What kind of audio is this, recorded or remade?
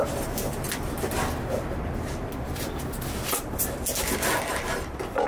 recorded